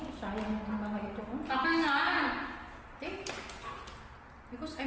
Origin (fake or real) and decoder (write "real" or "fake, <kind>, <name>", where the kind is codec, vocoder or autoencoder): real